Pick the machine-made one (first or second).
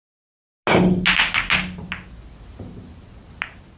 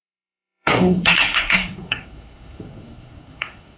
second